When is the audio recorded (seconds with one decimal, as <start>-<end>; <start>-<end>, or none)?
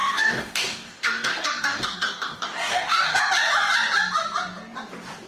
3.2-5.3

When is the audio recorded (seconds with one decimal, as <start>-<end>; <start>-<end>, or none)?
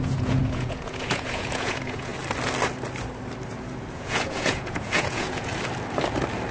2.1-3.9; 5.5-6.5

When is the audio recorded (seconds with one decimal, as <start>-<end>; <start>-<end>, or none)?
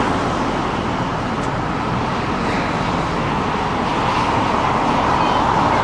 0.0-1.1; 4.6-5.8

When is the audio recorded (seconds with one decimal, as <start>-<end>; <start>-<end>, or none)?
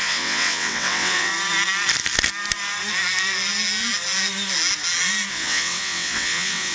1.3-5.3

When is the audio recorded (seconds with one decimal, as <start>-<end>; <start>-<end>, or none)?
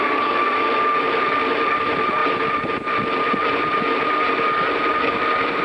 0.0-5.6